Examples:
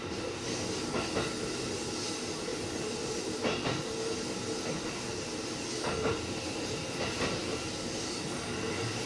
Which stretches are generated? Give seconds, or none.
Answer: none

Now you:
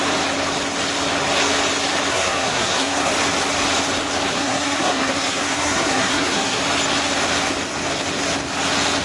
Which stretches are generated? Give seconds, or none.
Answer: 2.1-3.1 (codec, SNAC); 4.3-6.6

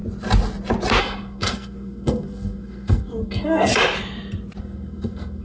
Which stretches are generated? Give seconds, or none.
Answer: 1.0-3.7 (codec, SNAC); 4.6-5.4

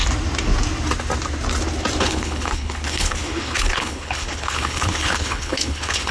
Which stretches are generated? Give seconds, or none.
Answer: 2.0-6.1 (codec, HILCodec)

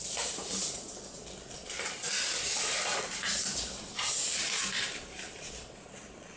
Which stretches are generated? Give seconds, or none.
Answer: none

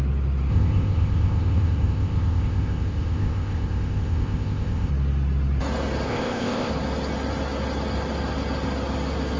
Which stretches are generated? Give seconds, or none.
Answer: 0.5-4.9 (codec, ZipCodec); 6.1-6.7